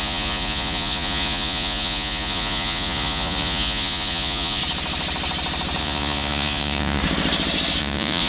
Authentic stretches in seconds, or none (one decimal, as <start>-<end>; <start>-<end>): 4.6-5.8; 7.0-7.8